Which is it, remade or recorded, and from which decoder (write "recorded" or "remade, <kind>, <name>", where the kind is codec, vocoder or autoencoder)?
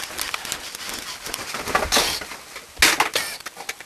recorded